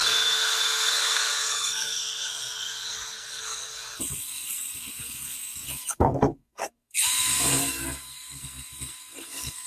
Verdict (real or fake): fake